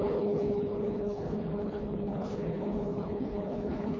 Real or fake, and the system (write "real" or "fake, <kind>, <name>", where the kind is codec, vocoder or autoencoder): fake, codec, HILCodec